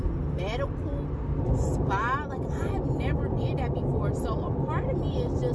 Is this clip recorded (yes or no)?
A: yes